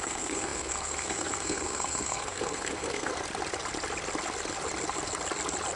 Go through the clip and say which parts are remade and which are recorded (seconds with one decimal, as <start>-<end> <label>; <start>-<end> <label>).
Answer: 0.0-3.1 remade; 3.1-5.8 recorded

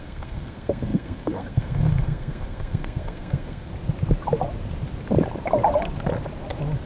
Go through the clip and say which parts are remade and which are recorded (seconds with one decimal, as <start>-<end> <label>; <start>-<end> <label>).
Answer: 0.0-3.7 remade; 3.7-6.9 recorded

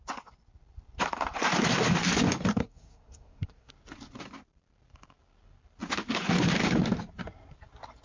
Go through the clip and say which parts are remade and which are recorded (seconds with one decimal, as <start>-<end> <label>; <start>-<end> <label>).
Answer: 0.0-2.5 recorded; 2.5-3.7 remade; 3.7-8.0 recorded

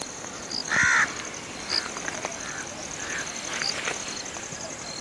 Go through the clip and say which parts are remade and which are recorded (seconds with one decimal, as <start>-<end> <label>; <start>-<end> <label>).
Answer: 0.0-5.0 recorded

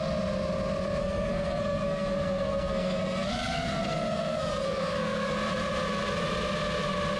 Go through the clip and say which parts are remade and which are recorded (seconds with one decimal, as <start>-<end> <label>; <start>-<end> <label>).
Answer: 0.0-1.0 recorded; 1.0-5.3 remade; 5.3-7.2 recorded

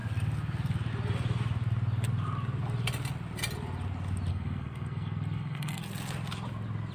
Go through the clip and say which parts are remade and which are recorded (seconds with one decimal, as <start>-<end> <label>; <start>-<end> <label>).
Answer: 0.0-4.3 recorded; 4.3-5.8 remade; 5.8-6.9 recorded

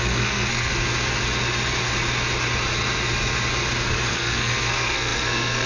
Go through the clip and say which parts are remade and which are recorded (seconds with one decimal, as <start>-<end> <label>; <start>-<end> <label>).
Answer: 0.0-0.7 remade; 0.7-4.1 recorded; 4.1-5.7 remade